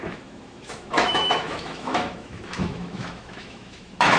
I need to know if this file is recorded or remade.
remade